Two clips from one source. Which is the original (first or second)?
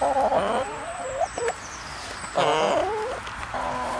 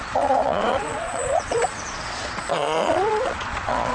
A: first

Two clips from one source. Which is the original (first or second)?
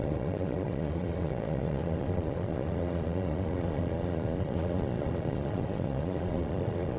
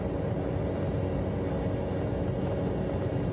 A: second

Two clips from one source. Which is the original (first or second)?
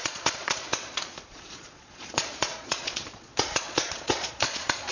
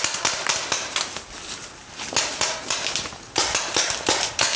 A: second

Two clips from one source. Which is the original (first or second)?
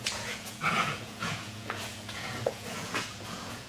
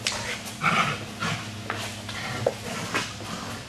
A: second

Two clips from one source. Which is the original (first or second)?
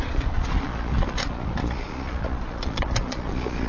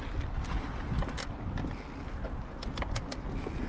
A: second